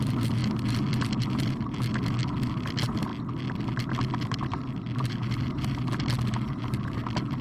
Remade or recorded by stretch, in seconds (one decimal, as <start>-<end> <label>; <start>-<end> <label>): 0.0-7.4 recorded